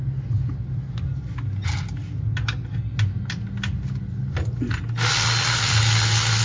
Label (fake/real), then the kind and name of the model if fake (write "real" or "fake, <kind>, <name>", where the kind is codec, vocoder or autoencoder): real